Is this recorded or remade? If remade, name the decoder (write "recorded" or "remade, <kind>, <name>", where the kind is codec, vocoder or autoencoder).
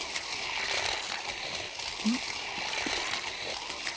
recorded